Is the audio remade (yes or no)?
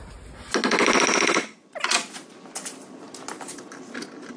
no